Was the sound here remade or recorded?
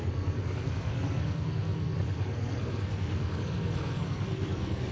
remade